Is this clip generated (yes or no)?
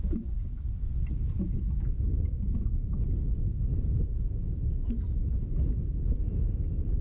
no